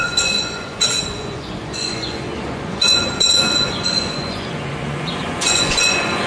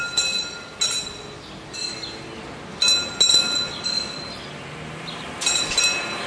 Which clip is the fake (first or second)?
first